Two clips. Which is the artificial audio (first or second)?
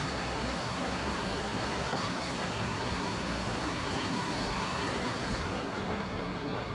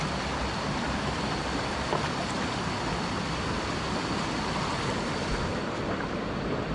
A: first